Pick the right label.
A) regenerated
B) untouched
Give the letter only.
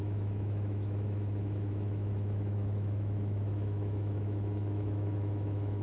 A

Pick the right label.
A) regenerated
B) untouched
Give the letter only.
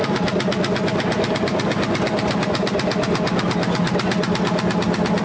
B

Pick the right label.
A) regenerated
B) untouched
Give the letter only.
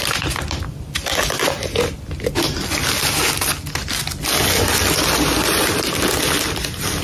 B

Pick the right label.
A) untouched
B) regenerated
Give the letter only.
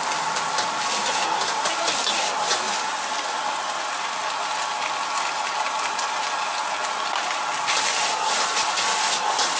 A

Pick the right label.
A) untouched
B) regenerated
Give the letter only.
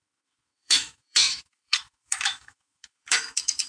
B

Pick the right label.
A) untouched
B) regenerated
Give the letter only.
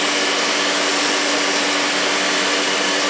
A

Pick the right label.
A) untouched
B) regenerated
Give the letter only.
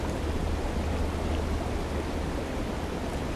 A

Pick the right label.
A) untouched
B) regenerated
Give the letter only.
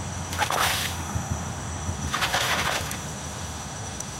B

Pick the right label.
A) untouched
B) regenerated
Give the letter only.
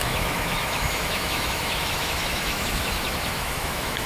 B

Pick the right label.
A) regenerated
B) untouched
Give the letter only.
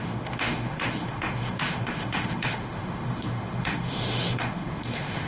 A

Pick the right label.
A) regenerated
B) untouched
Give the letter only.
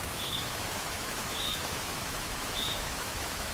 A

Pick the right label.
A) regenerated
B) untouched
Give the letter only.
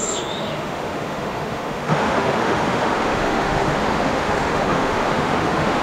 A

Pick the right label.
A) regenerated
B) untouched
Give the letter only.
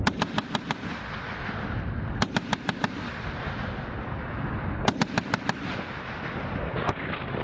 B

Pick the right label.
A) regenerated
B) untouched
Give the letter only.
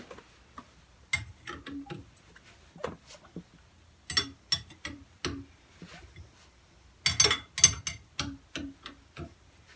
B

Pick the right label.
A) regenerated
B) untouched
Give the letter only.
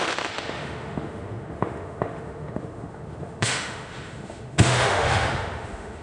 A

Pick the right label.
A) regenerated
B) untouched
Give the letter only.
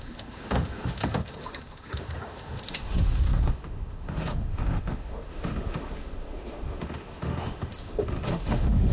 A